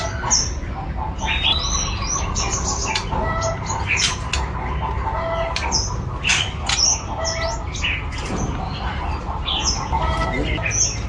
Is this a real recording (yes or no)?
yes